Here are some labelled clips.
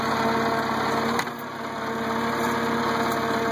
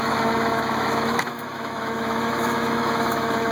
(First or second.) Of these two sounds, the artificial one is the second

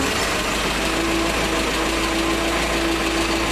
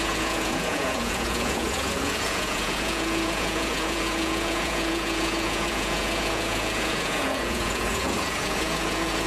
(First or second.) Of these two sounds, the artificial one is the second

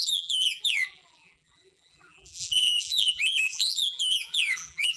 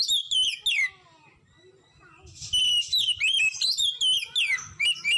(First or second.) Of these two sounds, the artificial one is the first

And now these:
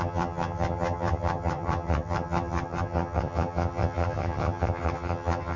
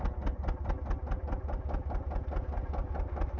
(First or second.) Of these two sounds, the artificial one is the first